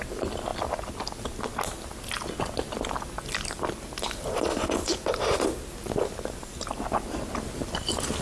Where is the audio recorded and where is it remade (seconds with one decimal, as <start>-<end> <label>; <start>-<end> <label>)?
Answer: 0.0-8.2 recorded